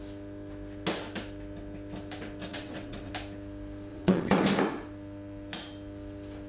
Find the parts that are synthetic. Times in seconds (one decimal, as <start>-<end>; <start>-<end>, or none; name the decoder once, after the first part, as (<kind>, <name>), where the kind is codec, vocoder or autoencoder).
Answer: 2.5-3.1 (vocoder, WaveNeXt); 3.9-4.4